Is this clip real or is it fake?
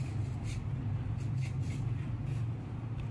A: real